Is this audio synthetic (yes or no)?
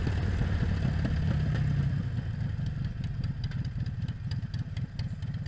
no